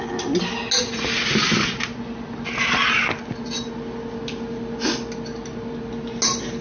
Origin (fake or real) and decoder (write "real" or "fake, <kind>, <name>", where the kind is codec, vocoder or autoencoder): real